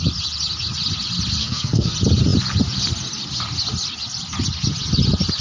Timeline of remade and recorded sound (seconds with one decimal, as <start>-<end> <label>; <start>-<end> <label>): 0.0-1.4 recorded; 1.4-1.9 remade; 1.9-5.4 recorded